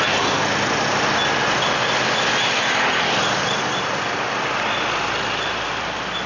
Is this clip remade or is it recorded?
recorded